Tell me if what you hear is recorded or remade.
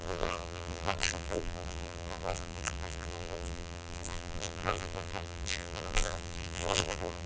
remade